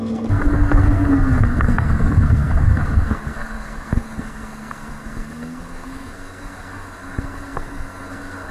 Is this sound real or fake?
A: fake